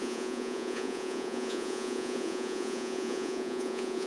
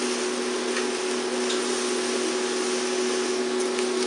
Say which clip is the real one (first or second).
second